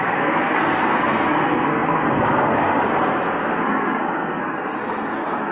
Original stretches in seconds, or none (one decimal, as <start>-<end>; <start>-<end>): none